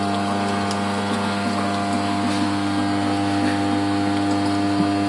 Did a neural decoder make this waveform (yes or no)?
no